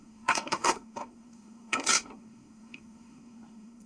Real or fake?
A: fake